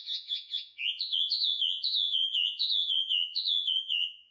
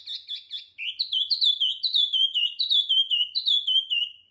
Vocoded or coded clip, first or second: first